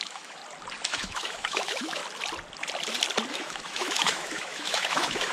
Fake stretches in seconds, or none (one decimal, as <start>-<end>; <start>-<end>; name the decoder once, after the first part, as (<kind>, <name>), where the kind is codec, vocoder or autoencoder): 0.0-0.4 (autoencoder, DAC-VAE); 0.9-2.0; 3.3-5.3

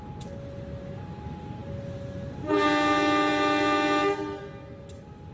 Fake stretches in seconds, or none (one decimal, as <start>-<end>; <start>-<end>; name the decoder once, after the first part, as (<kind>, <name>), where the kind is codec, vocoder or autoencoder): none

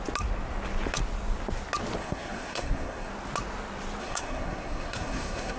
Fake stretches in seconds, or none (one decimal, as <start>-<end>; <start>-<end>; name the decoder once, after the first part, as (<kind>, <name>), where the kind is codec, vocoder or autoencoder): 2.0-3.1 (codec, SNAC); 4.0-5.6

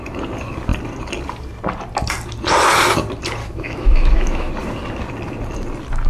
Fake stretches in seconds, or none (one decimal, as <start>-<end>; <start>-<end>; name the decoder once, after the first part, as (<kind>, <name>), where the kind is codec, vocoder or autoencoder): 3.4-4.5 (autoencoder, DAC-VAE)

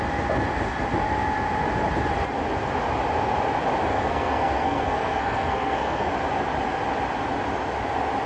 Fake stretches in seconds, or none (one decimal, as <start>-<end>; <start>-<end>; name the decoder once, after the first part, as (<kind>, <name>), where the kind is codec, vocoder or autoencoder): 3.9-6.1 (codec, SNAC)

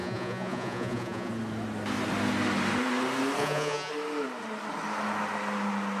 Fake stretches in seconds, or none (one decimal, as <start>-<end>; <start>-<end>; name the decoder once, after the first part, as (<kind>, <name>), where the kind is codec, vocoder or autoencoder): 0.0-1.3 (vocoder, Vocos); 3.4-3.9

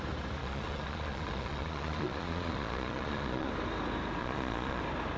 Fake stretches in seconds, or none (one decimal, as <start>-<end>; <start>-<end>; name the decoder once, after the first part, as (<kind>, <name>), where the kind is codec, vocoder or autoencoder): 0.4-3.5 (vocoder, Vocos); 4.2-4.8